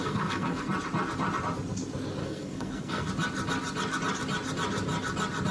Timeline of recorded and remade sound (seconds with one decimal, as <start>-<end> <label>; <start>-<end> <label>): 0.0-0.7 remade; 0.7-2.2 recorded; 2.2-3.1 remade; 3.1-5.5 recorded